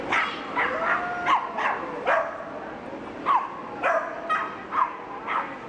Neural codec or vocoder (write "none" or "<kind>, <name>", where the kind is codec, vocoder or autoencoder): none